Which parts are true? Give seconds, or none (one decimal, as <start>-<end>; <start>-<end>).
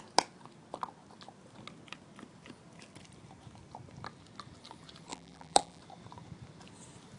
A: 0.0-5.1; 5.8-7.2